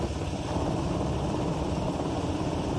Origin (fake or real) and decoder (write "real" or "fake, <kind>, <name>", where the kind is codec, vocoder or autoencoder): real